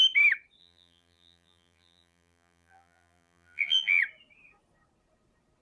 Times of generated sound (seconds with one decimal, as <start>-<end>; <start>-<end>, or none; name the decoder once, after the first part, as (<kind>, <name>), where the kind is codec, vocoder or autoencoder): 0.6-4.0 (vocoder, BigVGAN v2)